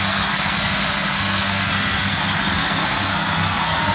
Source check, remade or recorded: remade